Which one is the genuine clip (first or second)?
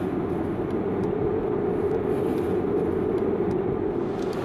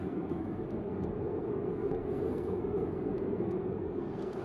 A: first